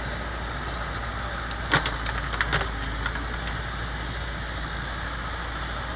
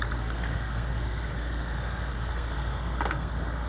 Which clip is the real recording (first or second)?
first